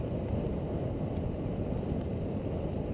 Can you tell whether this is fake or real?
real